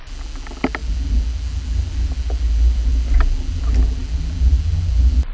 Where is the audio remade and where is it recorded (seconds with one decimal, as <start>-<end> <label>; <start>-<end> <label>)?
0.0-5.3 recorded